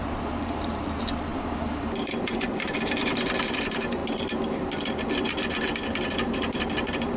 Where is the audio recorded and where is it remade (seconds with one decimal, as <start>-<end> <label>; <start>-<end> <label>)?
0.0-4.0 remade; 4.0-6.1 recorded; 6.1-7.2 remade